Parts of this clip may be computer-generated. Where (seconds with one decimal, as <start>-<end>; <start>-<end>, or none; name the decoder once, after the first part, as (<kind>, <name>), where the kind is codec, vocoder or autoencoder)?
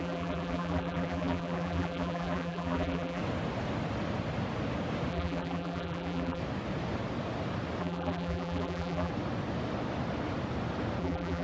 0.0-3.2 (vocoder, BigVGAN v2); 5.1-6.4; 7.8-9.1; 11.0-11.4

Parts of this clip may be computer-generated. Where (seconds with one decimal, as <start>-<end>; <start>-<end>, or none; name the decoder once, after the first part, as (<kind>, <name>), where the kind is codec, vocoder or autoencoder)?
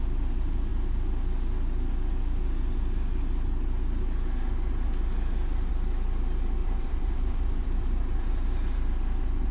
6.6-8.9 (vocoder, BigVGAN v2)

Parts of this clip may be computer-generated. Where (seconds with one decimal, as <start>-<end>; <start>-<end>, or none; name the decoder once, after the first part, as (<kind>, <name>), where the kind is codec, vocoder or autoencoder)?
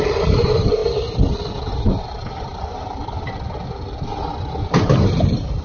0.0-0.8 (vocoder, BigVGAN v2); 2.4-3.0; 4.7-5.6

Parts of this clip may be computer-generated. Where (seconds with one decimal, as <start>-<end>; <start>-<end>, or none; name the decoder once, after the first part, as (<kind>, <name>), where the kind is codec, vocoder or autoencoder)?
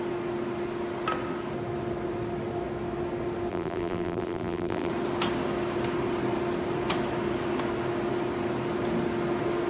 3.5-4.9 (vocoder, BigVGAN v2)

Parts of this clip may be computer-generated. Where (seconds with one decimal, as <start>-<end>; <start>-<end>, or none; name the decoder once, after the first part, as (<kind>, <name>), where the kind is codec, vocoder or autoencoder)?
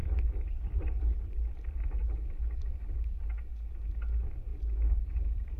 0.0-3.4 (vocoder, BigVGAN v2); 4.5-5.6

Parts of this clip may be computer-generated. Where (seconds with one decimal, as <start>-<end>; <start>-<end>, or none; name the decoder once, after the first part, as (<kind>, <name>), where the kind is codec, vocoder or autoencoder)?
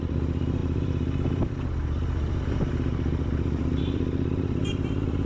0.0-5.3 (vocoder, BigVGAN v2)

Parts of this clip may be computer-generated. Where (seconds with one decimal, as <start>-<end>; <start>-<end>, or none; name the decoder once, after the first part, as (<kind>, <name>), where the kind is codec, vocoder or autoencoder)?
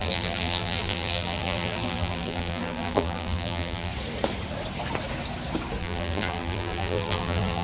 0.0-3.9 (vocoder, BigVGAN v2); 5.8-7.6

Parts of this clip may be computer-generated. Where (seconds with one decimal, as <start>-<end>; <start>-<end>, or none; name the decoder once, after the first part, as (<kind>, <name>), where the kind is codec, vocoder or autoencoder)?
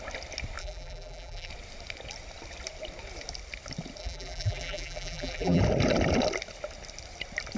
0.6-1.5 (vocoder, BigVGAN v2); 4.0-5.6